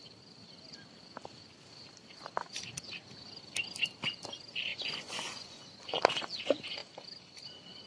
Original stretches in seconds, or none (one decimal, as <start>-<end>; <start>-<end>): 0.0-4.7; 6.0-7.9